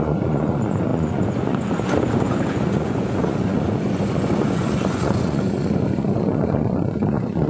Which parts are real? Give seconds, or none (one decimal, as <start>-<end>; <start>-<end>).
none